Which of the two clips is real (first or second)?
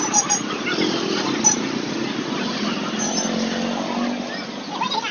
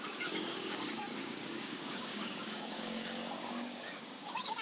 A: first